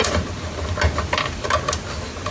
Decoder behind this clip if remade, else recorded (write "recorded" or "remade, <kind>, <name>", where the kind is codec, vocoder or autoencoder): recorded